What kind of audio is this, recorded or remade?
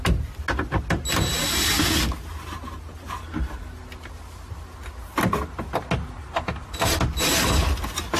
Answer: recorded